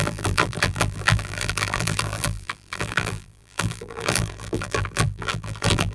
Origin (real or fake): fake